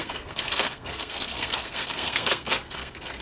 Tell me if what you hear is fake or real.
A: fake